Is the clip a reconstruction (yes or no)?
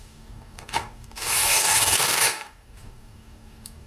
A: yes